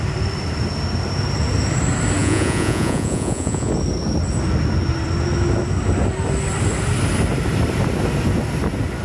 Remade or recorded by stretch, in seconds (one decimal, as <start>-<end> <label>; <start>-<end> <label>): 0.0-2.2 recorded; 2.2-3.7 remade; 3.7-9.0 recorded